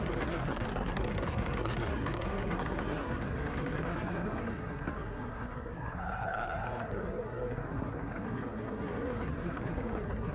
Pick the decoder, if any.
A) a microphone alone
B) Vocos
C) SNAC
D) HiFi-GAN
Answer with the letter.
C